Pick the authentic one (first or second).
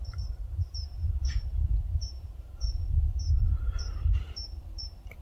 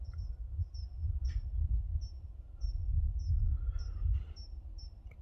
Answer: second